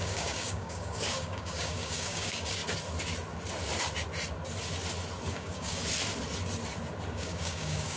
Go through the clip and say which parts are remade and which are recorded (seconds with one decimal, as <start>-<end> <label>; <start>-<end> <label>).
0.0-2.6 remade; 2.6-5.3 recorded; 5.3-5.8 remade; 5.8-7.1 recorded; 7.1-8.0 remade